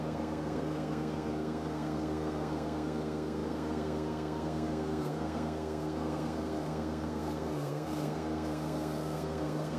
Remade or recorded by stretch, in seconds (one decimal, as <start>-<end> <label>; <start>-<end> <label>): 0.0-9.8 remade